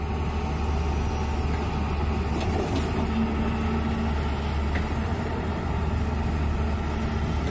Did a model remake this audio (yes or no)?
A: no